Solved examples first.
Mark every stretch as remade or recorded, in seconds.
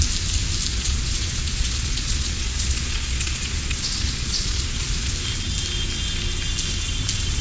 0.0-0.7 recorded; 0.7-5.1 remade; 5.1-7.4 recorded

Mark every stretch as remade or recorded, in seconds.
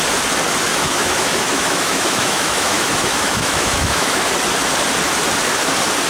0.0-0.7 recorded; 0.7-4.2 remade; 4.2-6.1 recorded